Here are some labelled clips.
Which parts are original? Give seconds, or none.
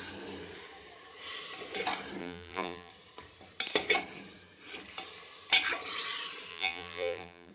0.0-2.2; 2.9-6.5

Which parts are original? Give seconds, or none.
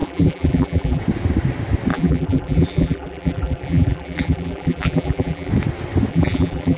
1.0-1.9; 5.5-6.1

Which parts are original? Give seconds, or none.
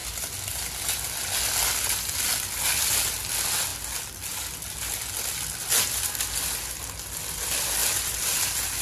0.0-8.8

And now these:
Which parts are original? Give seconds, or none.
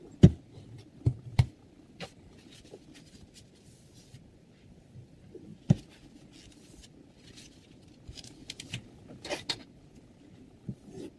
5.5-6.4; 8.4-9.5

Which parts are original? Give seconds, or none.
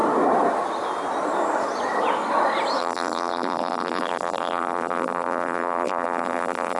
0.0-2.8